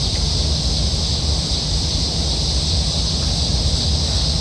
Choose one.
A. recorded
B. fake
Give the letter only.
A